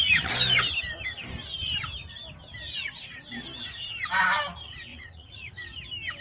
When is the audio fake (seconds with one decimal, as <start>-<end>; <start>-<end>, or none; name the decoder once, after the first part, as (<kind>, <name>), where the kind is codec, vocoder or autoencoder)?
4.9-5.5 (vocoder, Vocos)